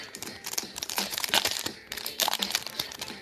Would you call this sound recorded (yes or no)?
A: no